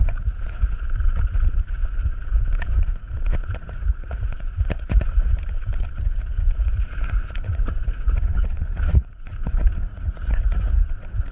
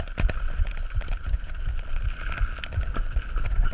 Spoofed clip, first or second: first